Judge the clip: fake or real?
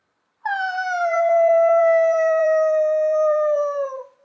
fake